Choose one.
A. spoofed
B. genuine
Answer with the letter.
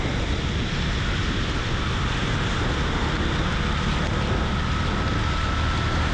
B